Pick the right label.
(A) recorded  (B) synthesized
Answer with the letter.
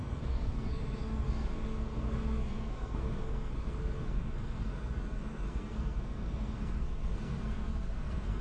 B